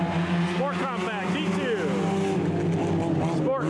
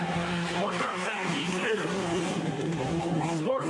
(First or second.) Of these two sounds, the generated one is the second